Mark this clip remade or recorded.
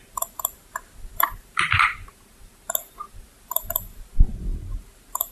recorded